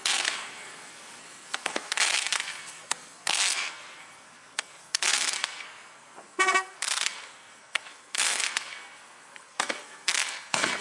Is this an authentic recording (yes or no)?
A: no